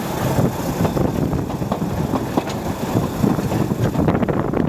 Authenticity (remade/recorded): recorded